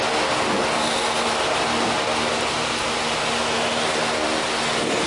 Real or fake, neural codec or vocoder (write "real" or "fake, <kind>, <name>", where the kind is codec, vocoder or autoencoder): real